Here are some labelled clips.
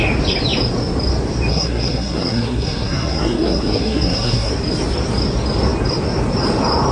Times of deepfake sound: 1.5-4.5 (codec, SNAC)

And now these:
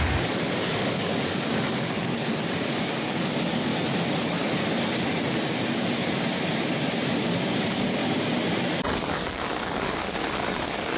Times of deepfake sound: 0.0-3.7 (codec, DAC); 7.6-8.0; 8.9-11.0